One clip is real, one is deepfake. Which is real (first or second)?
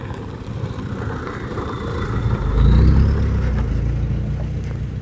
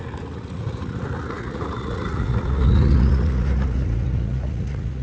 first